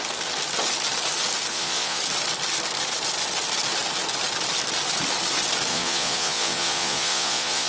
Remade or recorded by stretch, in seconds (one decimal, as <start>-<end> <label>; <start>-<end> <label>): 0.0-1.5 recorded; 1.5-2.0 remade; 2.0-5.7 recorded; 5.7-7.7 remade